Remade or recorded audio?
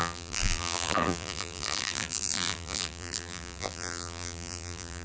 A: remade